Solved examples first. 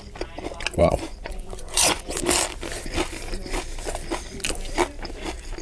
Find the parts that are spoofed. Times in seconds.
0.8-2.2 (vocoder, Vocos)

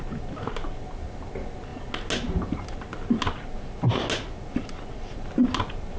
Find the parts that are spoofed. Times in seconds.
none

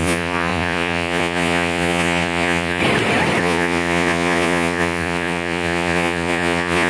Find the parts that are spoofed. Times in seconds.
0.0-2.8 (vocoder, Vocos); 3.4-6.9

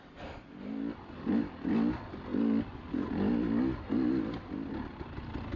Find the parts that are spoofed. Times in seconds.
none

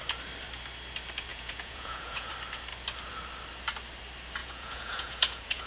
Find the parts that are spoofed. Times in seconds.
1.3-2.3 (vocoder, Vocos); 4.4-5.7